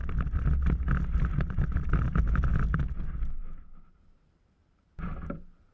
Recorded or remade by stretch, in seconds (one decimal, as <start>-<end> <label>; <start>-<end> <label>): 0.0-5.7 recorded